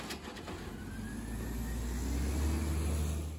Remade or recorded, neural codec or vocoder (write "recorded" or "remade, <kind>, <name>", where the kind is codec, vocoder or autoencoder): recorded